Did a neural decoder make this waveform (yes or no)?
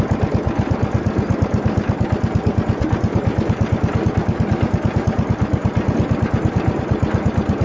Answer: no